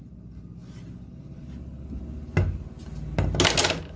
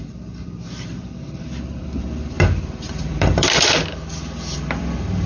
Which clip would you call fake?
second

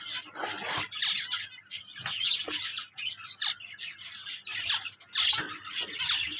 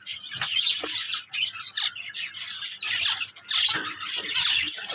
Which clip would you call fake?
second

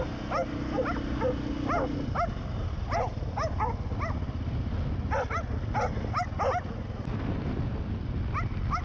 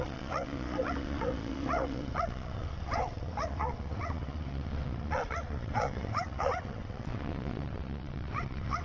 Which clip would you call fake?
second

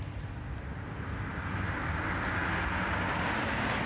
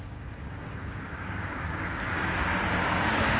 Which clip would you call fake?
second